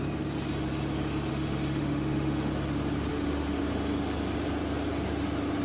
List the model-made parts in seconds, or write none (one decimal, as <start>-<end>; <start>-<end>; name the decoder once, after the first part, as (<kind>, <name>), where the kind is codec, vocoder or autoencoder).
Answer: 1.3-2.5 (autoencoder, DAC-VAE); 3.1-3.6